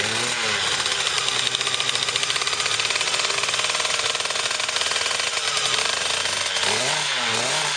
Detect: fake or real real